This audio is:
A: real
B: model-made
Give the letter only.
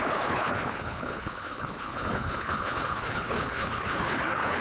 B